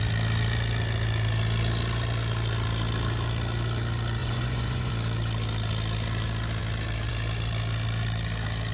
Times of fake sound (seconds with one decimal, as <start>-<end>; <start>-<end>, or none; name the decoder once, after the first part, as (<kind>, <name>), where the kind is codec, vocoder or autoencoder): 4.2-4.9 (vocoder, Vocos)